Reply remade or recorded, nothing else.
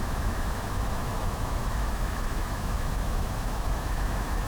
remade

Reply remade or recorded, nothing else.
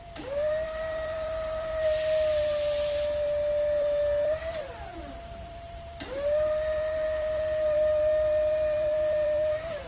remade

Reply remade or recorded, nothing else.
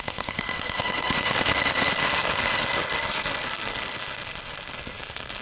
remade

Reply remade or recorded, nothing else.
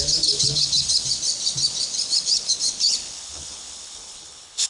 remade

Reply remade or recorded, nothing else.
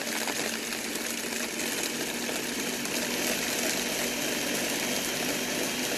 recorded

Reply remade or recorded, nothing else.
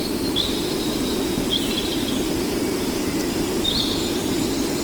recorded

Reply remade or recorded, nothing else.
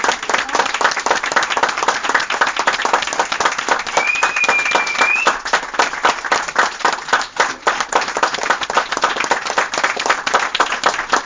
recorded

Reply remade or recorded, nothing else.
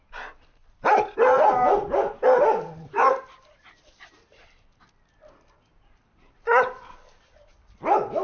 recorded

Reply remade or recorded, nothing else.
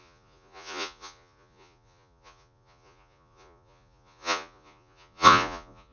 remade